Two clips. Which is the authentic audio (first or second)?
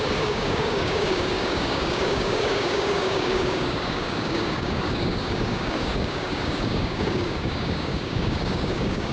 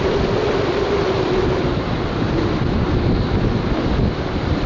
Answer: second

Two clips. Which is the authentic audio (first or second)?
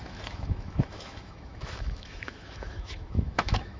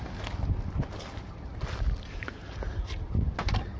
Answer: second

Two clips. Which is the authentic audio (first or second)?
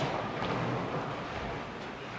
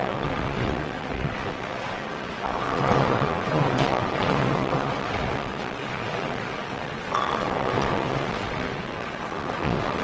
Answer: first